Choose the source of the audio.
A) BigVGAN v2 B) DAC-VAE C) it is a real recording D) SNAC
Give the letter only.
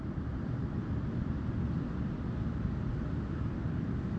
C